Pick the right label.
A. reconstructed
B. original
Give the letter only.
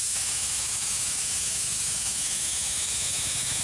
A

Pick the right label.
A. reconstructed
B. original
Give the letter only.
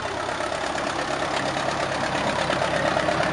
B